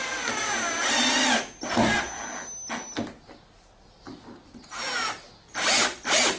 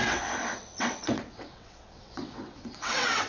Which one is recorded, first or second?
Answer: first